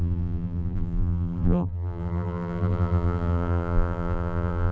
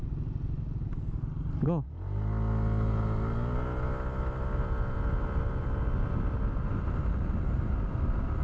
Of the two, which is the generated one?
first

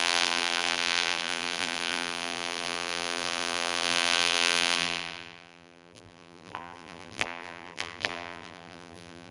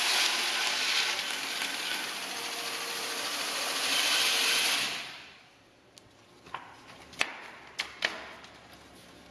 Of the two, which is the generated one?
first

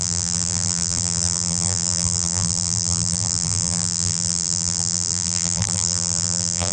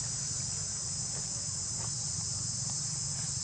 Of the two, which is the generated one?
first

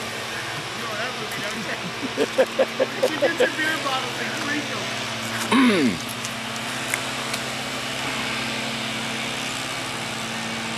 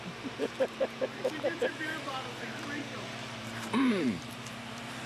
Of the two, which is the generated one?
second